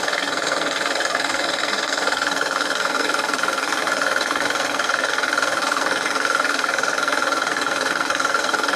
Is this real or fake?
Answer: fake